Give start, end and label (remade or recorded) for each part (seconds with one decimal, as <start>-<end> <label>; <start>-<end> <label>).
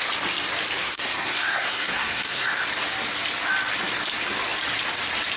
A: 0.0-0.8 recorded; 0.8-2.6 remade; 2.6-5.4 recorded